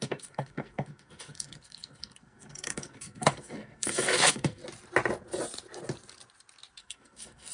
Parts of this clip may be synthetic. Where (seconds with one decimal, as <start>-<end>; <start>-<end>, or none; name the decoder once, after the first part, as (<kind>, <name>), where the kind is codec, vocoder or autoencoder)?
0.0-4.6 (codec, SNAC); 6.8-7.5